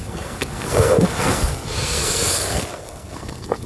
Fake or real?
fake